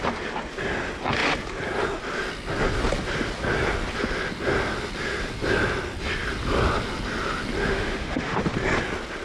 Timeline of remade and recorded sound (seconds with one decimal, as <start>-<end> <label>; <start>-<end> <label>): 0.0-7.7 recorded; 7.7-8.4 remade; 8.4-9.2 recorded